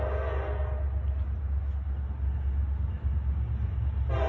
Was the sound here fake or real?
real